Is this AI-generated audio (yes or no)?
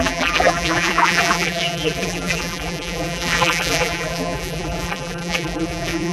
yes